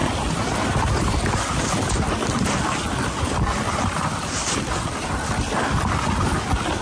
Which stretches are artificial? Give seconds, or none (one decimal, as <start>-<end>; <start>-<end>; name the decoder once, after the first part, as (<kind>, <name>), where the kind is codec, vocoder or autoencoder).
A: none